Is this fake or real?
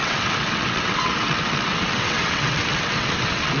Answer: fake